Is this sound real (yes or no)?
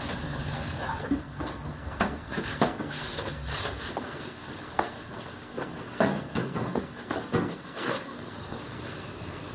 no